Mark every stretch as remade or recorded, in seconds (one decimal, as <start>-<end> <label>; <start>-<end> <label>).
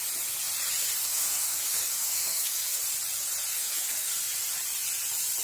0.0-1.0 recorded; 1.0-2.8 remade; 2.8-3.5 recorded; 3.5-4.1 remade; 4.1-5.4 recorded